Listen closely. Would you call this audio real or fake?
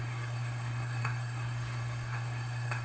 fake